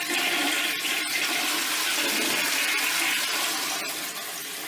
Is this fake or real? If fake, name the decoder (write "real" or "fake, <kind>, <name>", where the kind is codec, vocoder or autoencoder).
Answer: real